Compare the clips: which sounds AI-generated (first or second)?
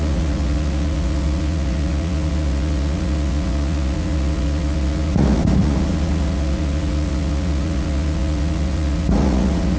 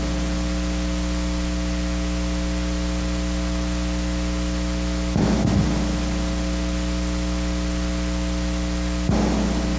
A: first